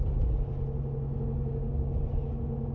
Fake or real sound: real